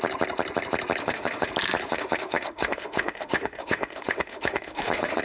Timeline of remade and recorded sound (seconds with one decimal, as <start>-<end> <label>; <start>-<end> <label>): 0.0-1.0 recorded; 1.0-1.5 remade; 1.5-1.9 recorded; 1.9-5.2 remade